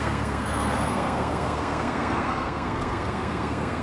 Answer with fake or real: fake